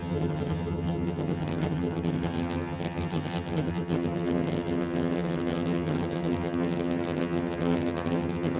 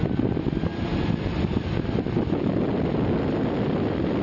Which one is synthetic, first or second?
first